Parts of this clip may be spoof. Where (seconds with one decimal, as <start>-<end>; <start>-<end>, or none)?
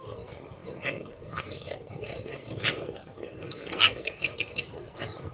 0.0-5.3